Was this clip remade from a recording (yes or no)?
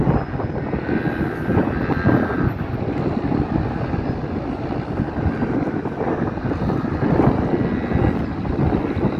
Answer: no